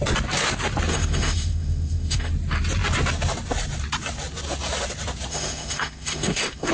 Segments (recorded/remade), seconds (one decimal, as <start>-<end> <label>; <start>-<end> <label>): 0.0-0.9 recorded; 0.9-2.3 remade; 2.3-5.3 recorded; 5.3-6.7 remade